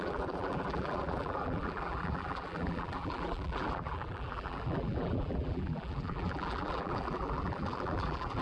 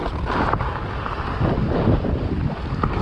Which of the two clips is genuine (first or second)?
second